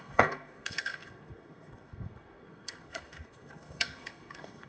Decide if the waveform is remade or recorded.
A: remade